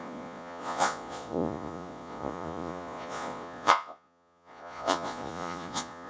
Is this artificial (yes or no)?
yes